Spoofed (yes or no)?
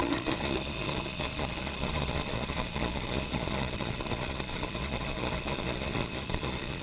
yes